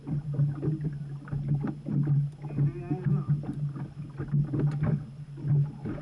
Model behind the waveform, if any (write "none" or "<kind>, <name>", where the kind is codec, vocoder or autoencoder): none